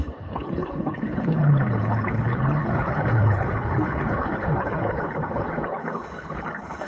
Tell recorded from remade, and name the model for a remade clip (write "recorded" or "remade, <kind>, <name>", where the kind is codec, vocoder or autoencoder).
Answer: remade, codec, HILCodec